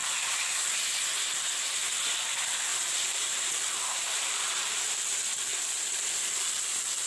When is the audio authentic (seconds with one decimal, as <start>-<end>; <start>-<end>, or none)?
0.6-2.7; 4.8-7.1